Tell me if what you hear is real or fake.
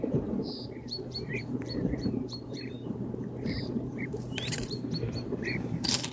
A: fake